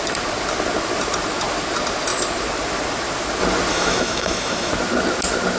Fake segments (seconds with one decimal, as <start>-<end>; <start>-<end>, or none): 3.7-4.7